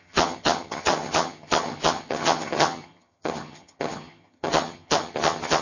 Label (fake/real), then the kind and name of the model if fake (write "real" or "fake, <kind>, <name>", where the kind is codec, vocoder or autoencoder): fake, vocoder, HiFi-GAN